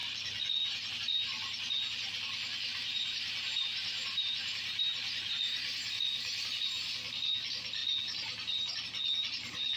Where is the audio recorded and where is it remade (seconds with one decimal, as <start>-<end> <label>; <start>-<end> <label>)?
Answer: 0.0-2.7 recorded; 2.7-4.9 remade; 4.9-9.8 recorded